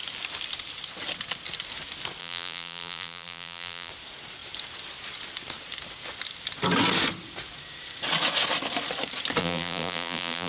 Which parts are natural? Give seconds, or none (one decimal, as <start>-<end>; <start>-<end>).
0.0-2.2; 3.9-9.4